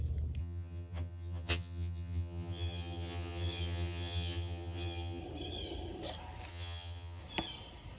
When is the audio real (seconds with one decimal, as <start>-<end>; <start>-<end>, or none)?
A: 0.0-0.4; 5.2-6.5; 7.2-8.0